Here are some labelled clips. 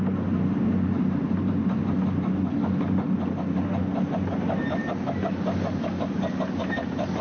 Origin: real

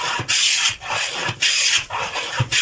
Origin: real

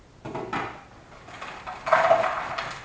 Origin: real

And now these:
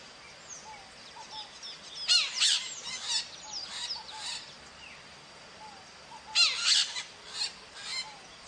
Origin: real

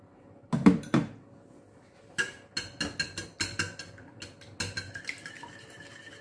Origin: real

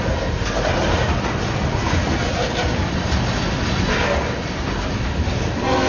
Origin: real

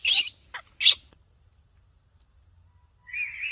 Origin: real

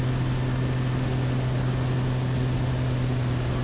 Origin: real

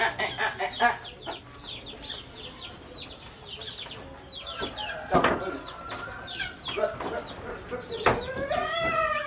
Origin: real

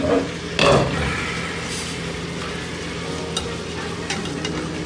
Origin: real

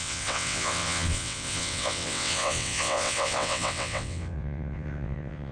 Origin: fake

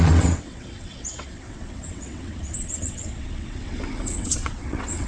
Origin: fake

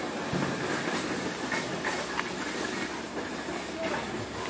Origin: real